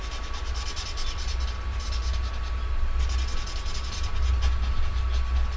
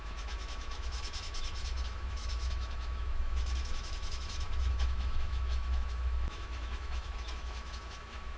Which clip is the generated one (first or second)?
second